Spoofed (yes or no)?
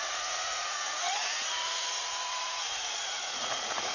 yes